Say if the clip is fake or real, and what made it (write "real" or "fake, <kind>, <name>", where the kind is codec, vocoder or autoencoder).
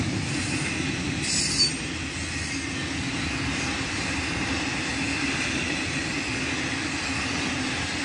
real